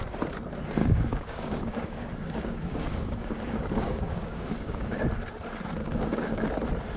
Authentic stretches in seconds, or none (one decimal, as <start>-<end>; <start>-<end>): 0.0-0.8; 5.0-5.8; 6.5-7.0